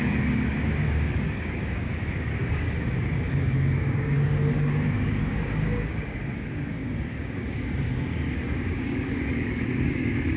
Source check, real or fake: fake